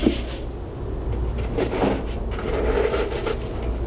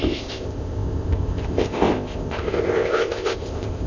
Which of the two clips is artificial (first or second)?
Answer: second